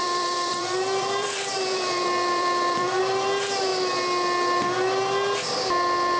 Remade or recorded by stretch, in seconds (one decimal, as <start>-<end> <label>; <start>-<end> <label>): 0.0-3.0 remade; 3.0-6.2 recorded